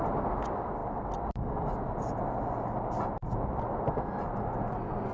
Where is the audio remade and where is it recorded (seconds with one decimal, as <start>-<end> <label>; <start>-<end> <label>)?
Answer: 0.0-5.1 recorded

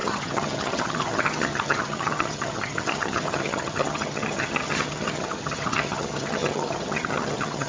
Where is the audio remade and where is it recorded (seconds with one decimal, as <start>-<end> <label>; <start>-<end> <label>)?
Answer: 0.0-7.7 remade

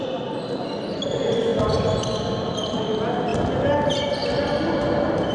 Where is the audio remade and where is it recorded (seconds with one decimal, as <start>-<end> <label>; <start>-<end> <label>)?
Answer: 0.0-5.3 recorded